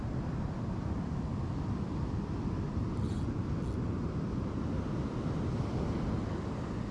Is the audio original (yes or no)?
yes